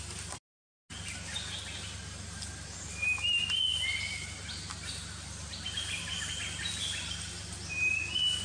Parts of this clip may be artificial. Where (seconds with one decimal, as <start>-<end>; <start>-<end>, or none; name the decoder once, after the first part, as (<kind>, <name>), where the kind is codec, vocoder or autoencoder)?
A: 3.7-6.6 (vocoder, BigVGAN v2)